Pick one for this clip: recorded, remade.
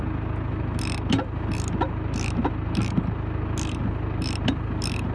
recorded